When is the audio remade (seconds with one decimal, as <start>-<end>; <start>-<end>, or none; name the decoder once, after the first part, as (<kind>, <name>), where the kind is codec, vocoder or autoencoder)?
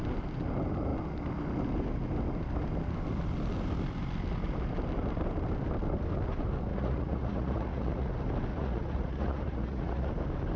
6.7-8.1 (vocoder, Vocos); 8.5-10.1